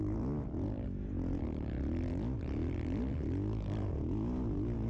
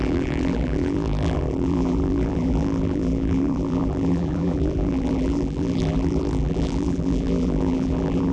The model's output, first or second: second